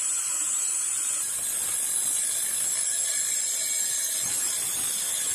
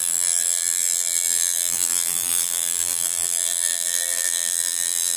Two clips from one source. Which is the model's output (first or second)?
second